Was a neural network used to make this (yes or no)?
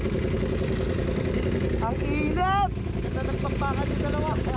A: no